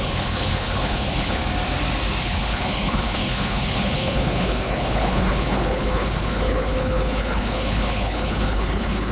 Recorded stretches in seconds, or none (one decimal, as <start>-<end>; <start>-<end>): 1.4-2.2